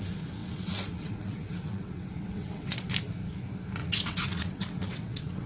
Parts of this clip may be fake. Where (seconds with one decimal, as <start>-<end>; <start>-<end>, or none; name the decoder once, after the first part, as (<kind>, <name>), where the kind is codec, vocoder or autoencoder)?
0.4-2.9 (vocoder, WaveNeXt); 3.8-5.5